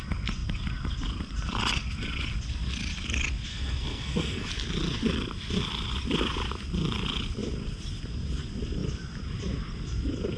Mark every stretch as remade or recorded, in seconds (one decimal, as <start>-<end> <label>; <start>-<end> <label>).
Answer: 0.0-3.5 recorded; 3.5-4.5 remade; 4.5-10.4 recorded